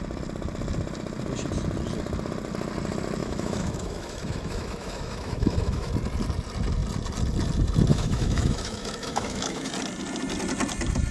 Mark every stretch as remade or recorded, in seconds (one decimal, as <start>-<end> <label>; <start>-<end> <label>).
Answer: 0.0-3.2 recorded; 3.2-5.9 remade; 5.9-7.9 recorded; 7.9-9.7 remade; 9.7-11.1 recorded